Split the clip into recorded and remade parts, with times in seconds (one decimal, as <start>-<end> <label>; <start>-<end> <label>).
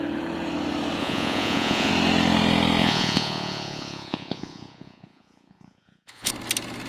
0.0-1.0 recorded; 1.0-1.9 remade; 1.9-2.8 recorded; 2.8-6.3 remade; 6.3-6.9 recorded